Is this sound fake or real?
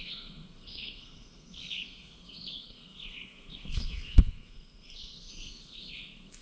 fake